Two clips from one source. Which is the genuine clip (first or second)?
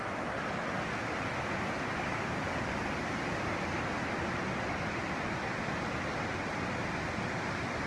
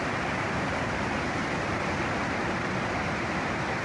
first